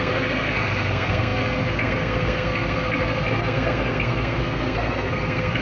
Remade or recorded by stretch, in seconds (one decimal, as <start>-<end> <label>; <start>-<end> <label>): 0.0-5.6 remade